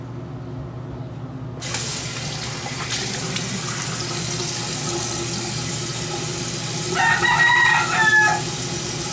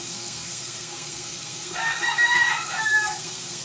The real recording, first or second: first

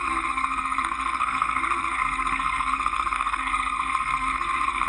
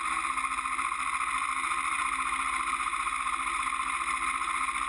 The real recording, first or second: second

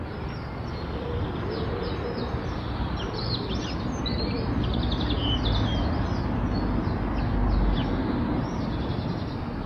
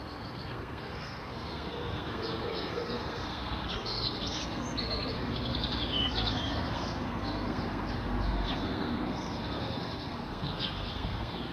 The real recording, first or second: first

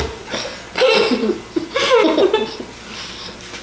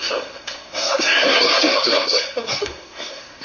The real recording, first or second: first